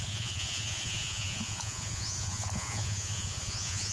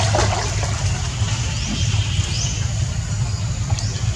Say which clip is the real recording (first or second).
second